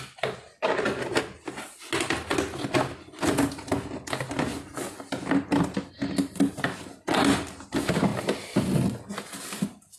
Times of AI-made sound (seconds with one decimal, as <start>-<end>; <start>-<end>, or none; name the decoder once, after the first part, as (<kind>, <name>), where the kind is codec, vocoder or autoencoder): none